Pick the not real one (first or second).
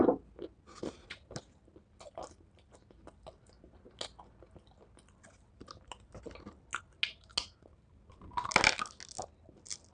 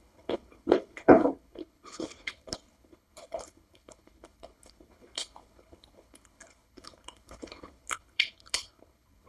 second